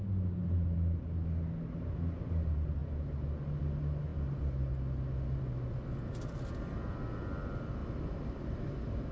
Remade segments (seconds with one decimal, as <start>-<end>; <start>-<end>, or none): 7.8-8.7